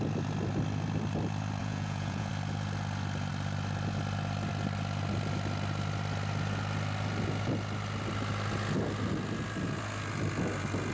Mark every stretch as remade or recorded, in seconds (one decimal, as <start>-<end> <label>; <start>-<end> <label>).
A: 0.0-1.6 recorded; 1.6-2.3 remade; 2.3-10.9 recorded